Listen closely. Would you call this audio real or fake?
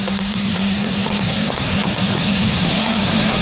fake